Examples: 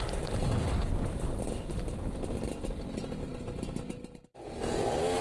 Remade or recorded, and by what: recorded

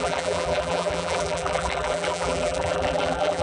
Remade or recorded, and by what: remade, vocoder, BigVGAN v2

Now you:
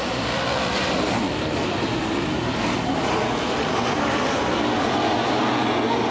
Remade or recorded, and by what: recorded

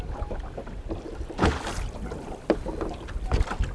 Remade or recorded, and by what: recorded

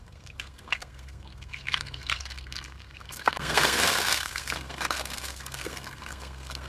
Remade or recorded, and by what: remade, codec, SNAC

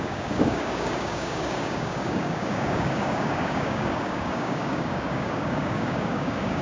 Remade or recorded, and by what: remade, codec, DAC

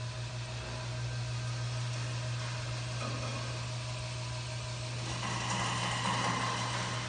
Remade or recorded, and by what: recorded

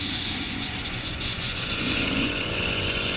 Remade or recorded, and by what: remade, vocoder, Vocos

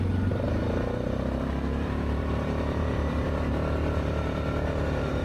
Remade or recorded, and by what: remade, vocoder, BigVGAN v2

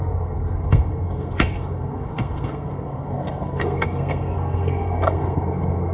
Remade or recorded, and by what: remade, codec, SNAC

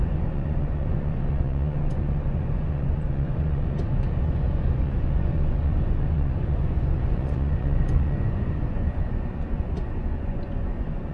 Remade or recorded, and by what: remade, vocoder, Vocos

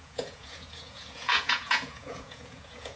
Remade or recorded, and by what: remade, vocoder, Vocos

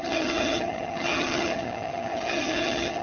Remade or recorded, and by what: remade, vocoder, HiFi-GAN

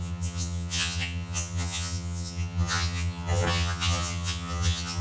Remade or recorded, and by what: remade, vocoder, HiFi-GAN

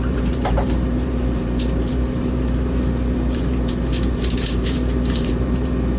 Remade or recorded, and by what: remade, vocoder, BigVGAN v2